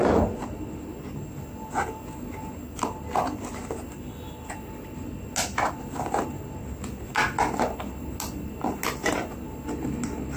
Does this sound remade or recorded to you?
recorded